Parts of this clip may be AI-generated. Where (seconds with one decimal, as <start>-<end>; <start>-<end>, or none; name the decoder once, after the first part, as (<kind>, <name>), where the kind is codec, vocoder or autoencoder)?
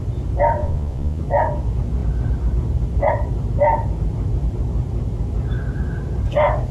0.6-1.2 (vocoder, Vocos)